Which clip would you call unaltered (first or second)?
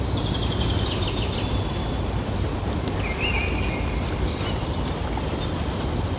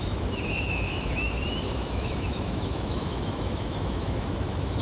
first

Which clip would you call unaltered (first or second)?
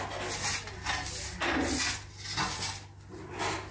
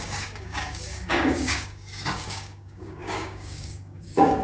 first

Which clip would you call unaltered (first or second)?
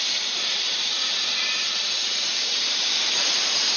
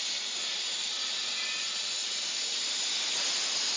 second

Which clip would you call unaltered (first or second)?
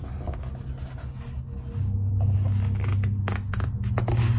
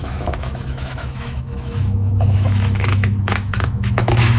first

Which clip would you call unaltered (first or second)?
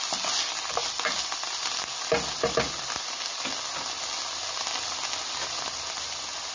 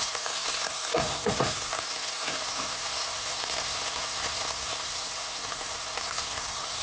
first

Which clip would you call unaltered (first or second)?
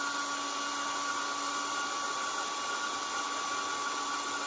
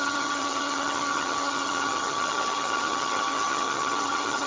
first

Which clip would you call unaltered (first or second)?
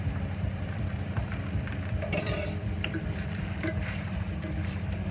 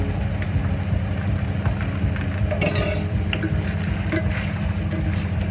second